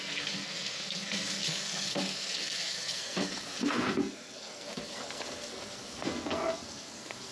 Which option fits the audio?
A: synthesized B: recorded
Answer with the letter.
A